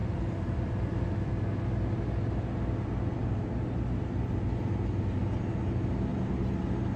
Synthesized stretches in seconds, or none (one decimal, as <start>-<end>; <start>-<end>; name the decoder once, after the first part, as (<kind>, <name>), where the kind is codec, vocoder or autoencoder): 0.0-1.3 (vocoder, BigVGAN v2); 6.1-7.0